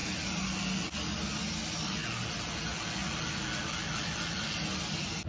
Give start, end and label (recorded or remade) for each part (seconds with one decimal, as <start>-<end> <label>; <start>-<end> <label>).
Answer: 0.0-5.3 recorded